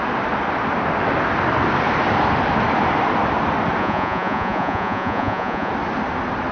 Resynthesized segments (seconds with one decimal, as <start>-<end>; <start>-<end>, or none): 3.8-5.7